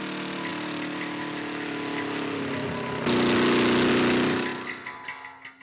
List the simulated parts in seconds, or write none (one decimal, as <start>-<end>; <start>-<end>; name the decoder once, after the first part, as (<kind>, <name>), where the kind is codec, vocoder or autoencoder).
none